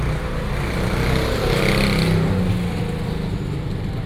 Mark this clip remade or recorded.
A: recorded